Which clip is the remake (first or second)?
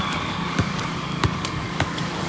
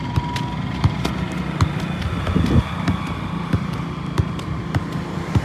first